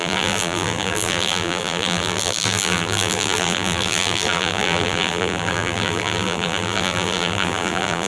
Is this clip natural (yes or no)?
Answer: no